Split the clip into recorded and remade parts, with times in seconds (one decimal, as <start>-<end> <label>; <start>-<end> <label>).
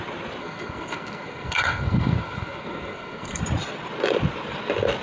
0.0-0.4 recorded; 0.4-3.4 remade; 3.4-5.0 recorded